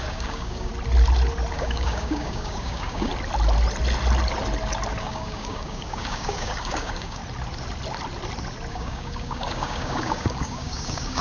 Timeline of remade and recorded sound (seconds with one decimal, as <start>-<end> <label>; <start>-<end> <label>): 0.0-0.7 remade; 0.7-1.5 recorded; 1.5-3.1 remade; 3.1-5.0 recorded; 5.0-7.2 remade; 7.2-8.7 recorded; 8.7-11.2 remade